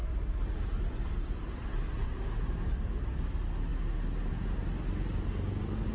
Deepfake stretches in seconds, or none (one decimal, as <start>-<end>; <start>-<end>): 0.0-3.2